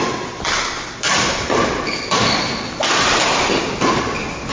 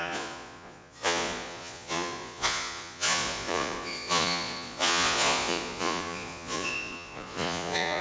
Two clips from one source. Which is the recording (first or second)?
first